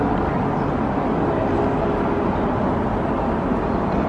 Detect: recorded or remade recorded